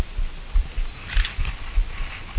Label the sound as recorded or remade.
recorded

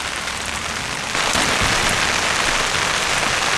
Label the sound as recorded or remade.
recorded